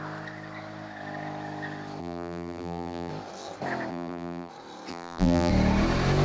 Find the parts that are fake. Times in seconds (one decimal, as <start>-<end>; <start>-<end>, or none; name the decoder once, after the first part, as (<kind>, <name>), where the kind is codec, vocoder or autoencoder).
2.0-3.1 (vocoder, BigVGAN v2); 3.9-4.5; 4.9-5.5